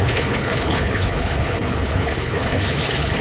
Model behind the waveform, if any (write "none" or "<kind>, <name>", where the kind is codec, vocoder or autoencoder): codec, HILCodec